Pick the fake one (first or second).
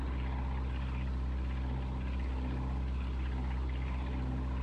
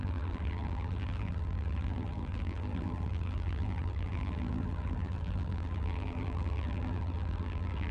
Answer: second